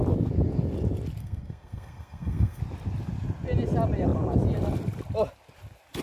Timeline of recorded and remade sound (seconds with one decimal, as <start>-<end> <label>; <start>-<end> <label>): 0.0-1.2 recorded; 1.2-2.6 remade; 2.6-6.0 recorded